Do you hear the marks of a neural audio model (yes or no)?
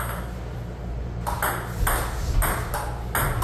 no